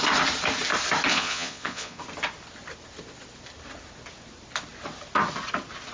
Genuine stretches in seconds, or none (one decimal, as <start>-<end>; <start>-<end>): 0.0-1.1; 2.0-5.9